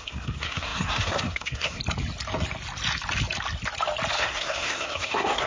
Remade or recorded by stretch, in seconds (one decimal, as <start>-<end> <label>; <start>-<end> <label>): 0.0-1.8 remade; 1.8-4.1 recorded; 4.1-5.5 remade